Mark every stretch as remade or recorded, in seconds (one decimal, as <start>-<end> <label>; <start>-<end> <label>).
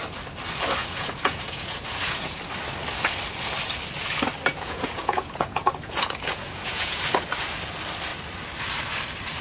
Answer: 0.0-0.8 recorded; 0.8-2.4 remade; 2.4-4.5 recorded; 4.5-7.0 remade; 7.0-9.4 recorded